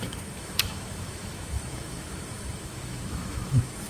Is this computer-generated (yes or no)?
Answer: yes